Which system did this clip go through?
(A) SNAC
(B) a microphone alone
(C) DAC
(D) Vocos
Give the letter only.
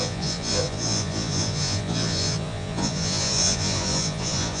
D